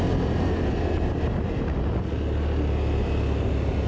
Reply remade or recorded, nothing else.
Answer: recorded